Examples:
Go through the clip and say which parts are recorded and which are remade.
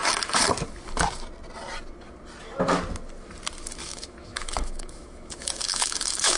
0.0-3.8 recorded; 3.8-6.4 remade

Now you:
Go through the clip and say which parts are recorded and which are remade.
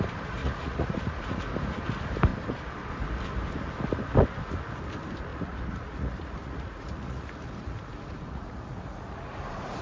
0.0-0.4 recorded; 0.4-1.4 remade; 1.4-5.3 recorded; 5.3-9.8 remade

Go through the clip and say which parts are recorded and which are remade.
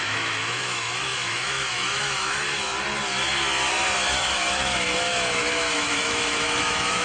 0.0-2.7 remade; 2.7-4.2 recorded; 4.2-7.0 remade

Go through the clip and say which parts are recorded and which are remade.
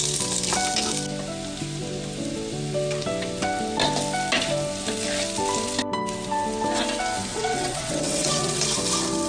0.0-7.3 recorded; 7.3-8.6 remade; 8.6-9.3 recorded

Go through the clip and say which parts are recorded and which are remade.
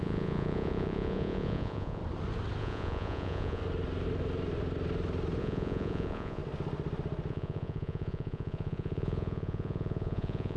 0.0-2.0 remade; 2.0-2.6 recorded; 2.6-3.6 remade; 3.6-5.4 recorded; 5.4-6.4 remade; 6.4-7.3 recorded; 7.3-10.6 remade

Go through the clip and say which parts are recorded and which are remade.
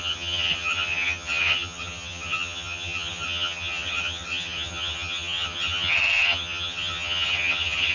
0.0-7.9 remade